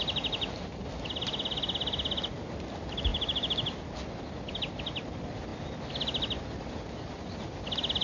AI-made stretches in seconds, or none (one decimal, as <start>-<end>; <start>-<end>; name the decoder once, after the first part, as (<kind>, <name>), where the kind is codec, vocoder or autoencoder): none